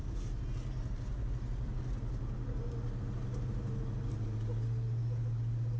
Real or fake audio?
real